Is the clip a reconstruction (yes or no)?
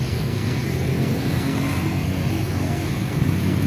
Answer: yes